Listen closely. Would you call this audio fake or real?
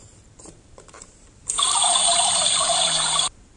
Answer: fake